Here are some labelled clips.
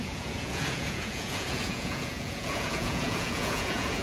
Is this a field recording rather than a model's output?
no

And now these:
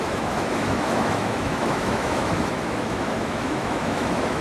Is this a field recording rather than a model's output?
no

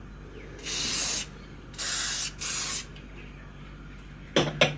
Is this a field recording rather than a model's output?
yes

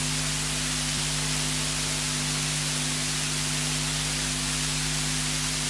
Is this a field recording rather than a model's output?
yes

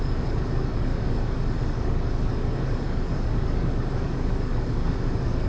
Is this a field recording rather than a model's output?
no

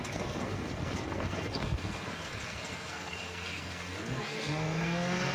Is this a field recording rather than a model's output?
no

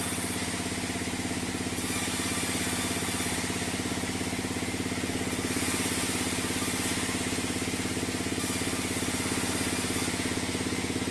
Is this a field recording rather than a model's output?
yes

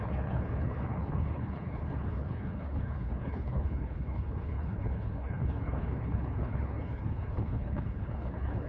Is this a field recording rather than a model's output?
no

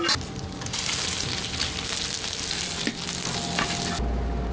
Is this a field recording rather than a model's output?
yes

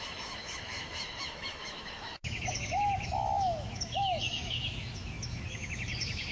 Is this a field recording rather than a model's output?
no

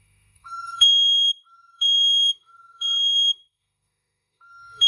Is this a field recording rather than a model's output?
no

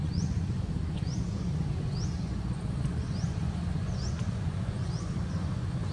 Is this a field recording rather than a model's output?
no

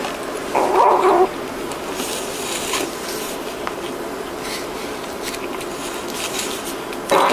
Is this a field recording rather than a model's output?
yes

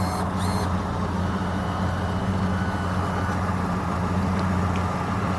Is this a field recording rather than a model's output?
yes